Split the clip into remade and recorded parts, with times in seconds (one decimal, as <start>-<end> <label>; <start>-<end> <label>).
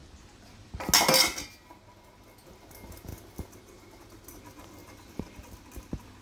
0.0-0.8 remade; 0.8-4.8 recorded; 4.8-5.7 remade; 5.7-6.2 recorded